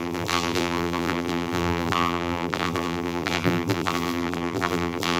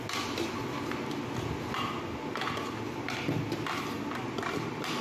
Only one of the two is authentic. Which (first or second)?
second